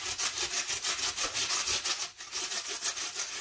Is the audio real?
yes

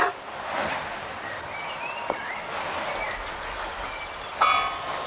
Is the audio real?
yes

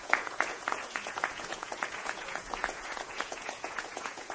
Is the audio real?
no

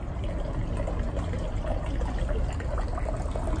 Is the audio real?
yes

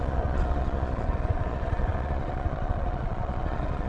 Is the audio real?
no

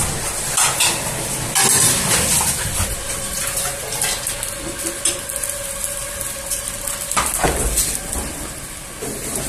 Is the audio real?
yes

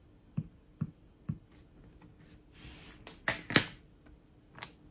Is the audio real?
yes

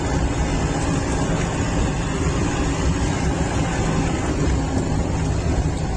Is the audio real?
yes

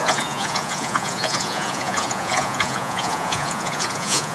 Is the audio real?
no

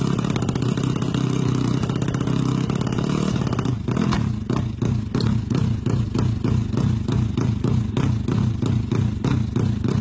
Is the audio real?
yes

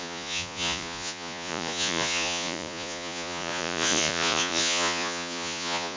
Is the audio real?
no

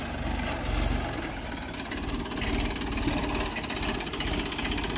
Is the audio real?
yes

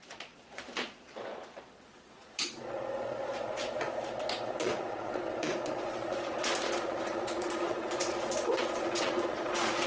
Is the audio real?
no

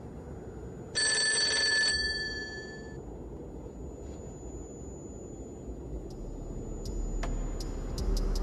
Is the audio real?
yes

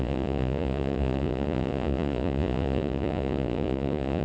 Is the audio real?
no